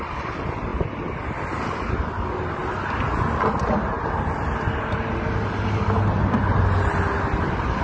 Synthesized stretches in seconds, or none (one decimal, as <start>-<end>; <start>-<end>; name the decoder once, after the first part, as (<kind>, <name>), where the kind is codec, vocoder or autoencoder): none